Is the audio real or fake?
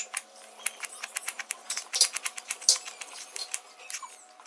real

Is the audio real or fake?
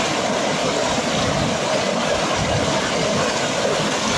real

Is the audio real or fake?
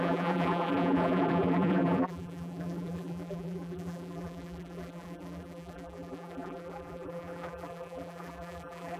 fake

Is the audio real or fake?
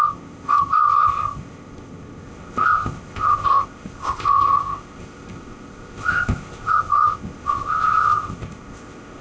fake